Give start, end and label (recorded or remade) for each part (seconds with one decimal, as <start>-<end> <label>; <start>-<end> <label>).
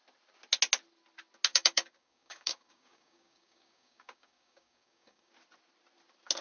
0.0-1.5 recorded; 1.5-5.3 remade; 5.3-6.4 recorded